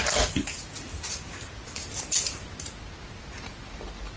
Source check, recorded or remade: recorded